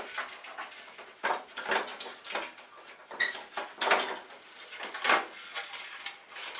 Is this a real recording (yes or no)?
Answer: yes